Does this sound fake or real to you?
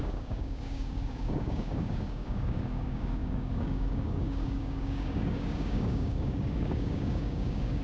fake